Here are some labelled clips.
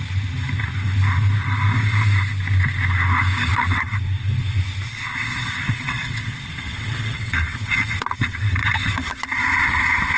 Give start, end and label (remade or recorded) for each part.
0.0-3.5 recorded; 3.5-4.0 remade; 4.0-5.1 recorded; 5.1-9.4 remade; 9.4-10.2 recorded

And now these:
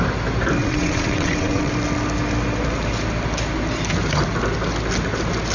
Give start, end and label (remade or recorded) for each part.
0.0-0.6 recorded; 0.6-1.7 remade; 1.7-5.5 recorded

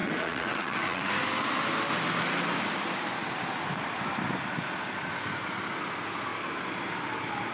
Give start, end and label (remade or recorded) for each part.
0.0-1.1 remade; 1.1-7.5 recorded

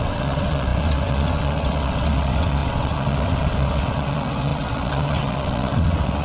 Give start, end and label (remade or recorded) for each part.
0.0-6.2 remade

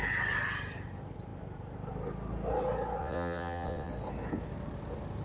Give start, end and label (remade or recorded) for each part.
0.0-3.0 recorded; 3.0-3.9 remade; 3.9-5.2 recorded

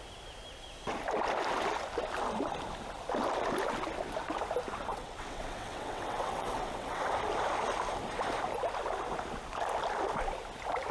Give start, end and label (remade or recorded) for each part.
0.0-4.9 recorded; 4.9-7.1 remade; 7.1-10.9 recorded

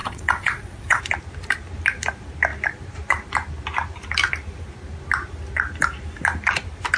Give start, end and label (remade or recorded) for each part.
0.0-1.0 remade; 1.0-7.0 recorded